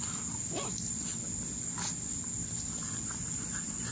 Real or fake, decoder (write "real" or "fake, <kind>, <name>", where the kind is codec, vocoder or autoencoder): real